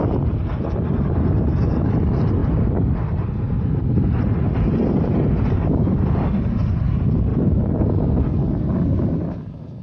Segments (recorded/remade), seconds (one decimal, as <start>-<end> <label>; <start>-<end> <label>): 0.0-9.8 recorded